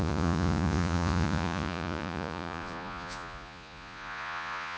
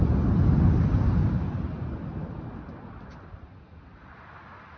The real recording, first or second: second